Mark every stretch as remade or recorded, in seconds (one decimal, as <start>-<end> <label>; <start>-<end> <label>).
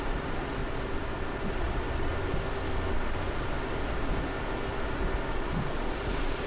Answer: 0.0-0.6 remade; 0.6-1.5 recorded; 1.5-2.1 remade; 2.1-5.3 recorded; 5.3-6.5 remade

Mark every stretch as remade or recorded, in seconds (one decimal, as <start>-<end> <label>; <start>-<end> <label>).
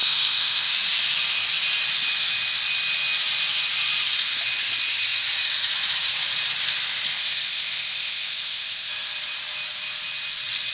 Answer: 0.0-0.7 remade; 0.7-7.1 recorded; 7.1-8.9 remade; 8.9-10.7 recorded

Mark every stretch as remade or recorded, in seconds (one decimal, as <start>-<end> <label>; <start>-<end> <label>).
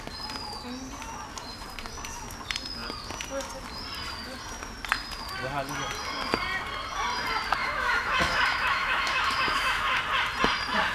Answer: 0.0-7.6 recorded; 7.6-10.0 remade; 10.0-10.9 recorded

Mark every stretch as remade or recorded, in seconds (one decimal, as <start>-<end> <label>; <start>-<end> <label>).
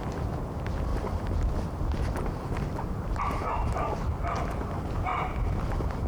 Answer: 0.0-0.9 recorded; 0.9-3.2 remade; 3.2-5.1 recorded; 5.1-6.1 remade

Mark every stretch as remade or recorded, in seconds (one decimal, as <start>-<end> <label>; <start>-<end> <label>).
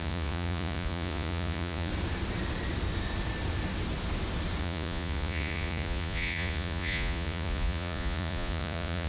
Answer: 0.0-1.9 remade; 1.9-4.6 recorded; 4.6-9.1 remade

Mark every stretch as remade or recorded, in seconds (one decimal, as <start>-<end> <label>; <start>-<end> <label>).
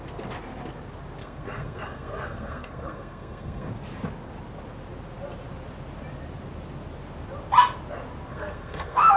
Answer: 0.0-1.2 recorded; 1.2-3.7 remade; 3.7-8.3 recorded; 8.3-9.2 remade